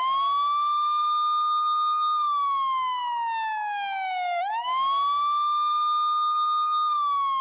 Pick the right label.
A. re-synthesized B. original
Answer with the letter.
A